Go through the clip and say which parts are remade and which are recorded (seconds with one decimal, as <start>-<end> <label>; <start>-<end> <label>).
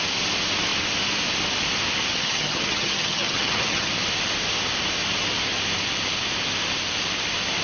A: 0.0-2.1 recorded; 2.1-3.9 remade; 3.9-7.6 recorded